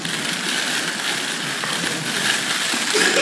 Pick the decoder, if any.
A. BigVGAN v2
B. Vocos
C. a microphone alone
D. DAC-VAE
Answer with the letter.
C